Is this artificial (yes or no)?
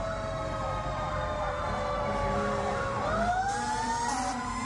yes